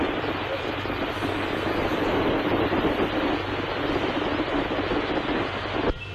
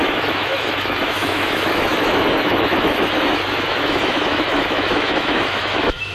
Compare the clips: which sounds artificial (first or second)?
second